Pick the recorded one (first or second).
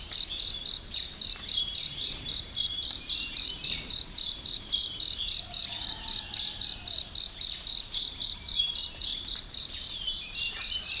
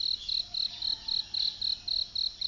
second